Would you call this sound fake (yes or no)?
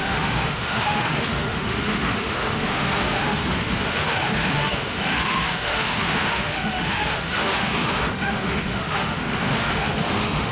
yes